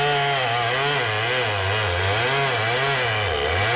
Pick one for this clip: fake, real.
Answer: real